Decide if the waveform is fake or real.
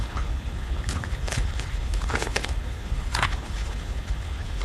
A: fake